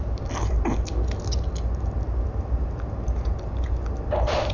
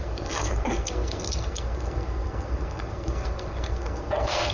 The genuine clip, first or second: first